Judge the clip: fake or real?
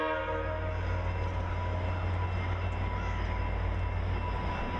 real